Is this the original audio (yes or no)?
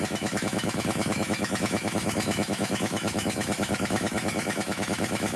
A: no